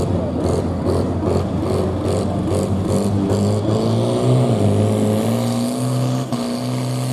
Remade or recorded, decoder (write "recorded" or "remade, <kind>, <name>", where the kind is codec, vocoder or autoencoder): recorded